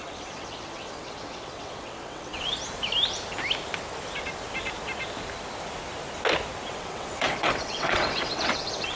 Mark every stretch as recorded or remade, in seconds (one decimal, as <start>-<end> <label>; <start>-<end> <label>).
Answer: 0.0-2.5 remade; 2.5-6.7 recorded; 6.7-9.0 remade